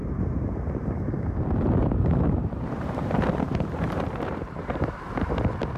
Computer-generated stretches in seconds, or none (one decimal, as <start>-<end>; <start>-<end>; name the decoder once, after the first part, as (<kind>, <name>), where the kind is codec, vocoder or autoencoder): 0.0-1.3 (vocoder, BigVGAN v2); 1.8-5.3